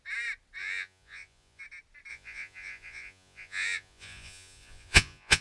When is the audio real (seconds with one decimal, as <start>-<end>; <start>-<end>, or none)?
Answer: 0.0-0.6; 1.6-2.1